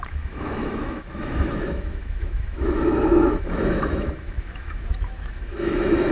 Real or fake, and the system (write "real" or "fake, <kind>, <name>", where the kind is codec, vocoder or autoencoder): fake, autoencoder, DAC-VAE